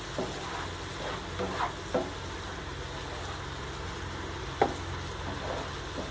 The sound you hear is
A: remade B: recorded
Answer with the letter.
B